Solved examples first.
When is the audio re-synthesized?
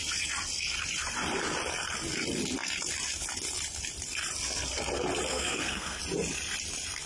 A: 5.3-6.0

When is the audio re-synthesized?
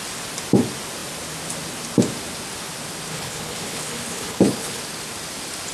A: 3.1-4.8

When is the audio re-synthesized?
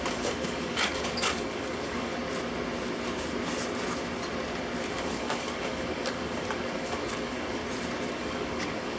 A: 0.0-2.1; 4.9-7.6; 8.1-9.0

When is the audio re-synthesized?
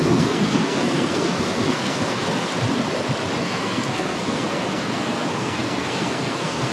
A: 0.0-2.5; 3.4-6.7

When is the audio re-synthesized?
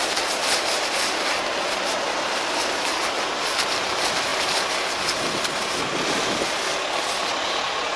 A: none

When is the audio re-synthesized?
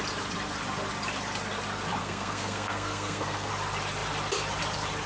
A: 2.0-3.5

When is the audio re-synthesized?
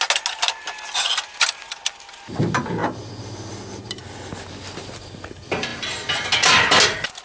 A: none